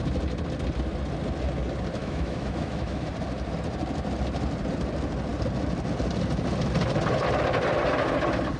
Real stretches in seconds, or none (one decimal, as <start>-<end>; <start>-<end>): 0.0-2.0; 3.1-8.6